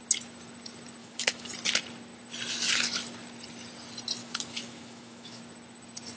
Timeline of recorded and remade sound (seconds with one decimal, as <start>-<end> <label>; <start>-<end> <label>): 0.0-1.0 recorded; 1.0-1.5 remade; 1.5-4.2 recorded; 4.2-5.4 remade; 5.4-6.2 recorded